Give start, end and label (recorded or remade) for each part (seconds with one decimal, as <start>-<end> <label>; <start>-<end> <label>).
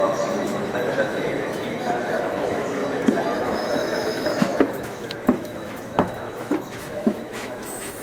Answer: 0.0-2.8 remade; 2.8-3.4 recorded; 3.4-8.0 remade